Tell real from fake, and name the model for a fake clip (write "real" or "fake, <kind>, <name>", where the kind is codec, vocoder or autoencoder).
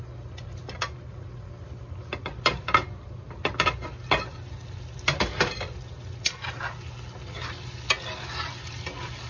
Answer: real